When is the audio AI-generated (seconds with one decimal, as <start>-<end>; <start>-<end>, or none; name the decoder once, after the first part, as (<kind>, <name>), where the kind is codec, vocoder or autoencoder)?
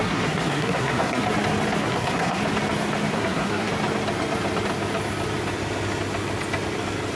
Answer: 0.0-1.2 (codec, SNAC); 1.8-2.4; 3.1-3.7